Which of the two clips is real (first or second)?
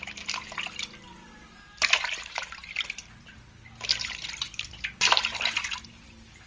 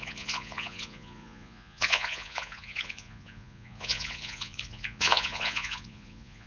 first